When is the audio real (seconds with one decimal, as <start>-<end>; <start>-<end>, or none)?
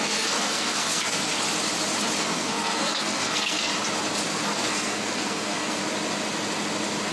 1.3-2.2; 3.7-4.3; 5.8-7.1